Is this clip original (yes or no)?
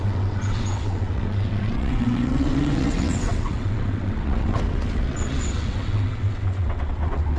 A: no